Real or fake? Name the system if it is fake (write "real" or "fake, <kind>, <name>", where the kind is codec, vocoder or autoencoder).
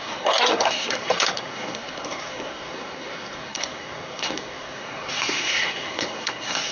fake, codec, SNAC